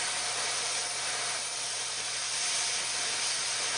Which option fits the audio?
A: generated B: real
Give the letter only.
B